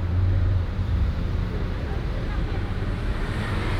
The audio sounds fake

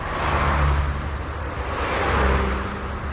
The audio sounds real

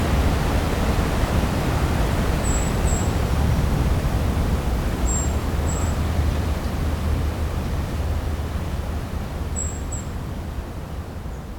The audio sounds fake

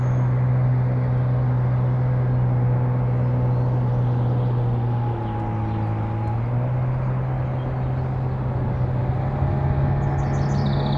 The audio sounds real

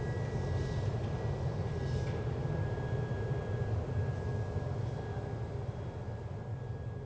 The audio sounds real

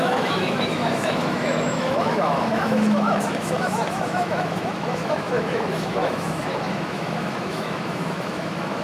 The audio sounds fake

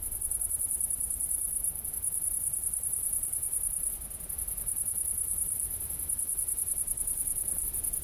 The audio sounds fake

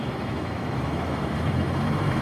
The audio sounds fake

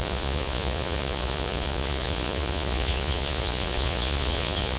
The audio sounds fake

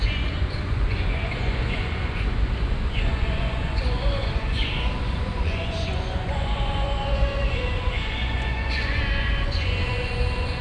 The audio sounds fake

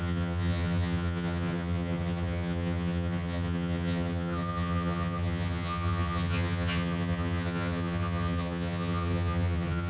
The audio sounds fake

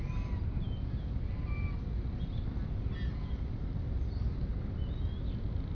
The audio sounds real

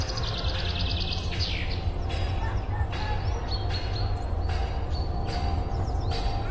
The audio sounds real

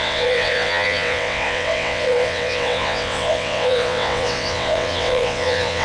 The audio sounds fake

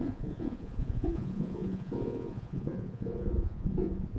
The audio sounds fake